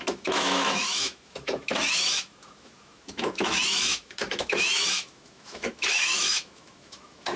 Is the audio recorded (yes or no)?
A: no